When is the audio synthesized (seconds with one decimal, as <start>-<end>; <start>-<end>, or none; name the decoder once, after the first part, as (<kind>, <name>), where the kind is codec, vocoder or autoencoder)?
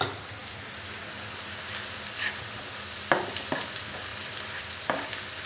none